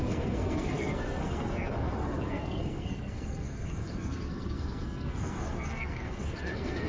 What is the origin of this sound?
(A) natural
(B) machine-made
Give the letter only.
B